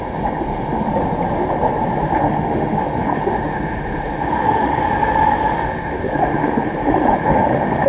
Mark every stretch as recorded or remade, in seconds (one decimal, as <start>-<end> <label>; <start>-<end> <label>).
0.0-0.9 remade; 0.9-2.2 recorded; 2.2-7.9 remade